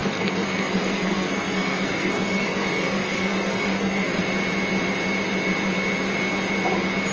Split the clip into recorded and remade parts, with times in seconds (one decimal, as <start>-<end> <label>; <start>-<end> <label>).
0.0-4.2 remade; 4.2-7.1 recorded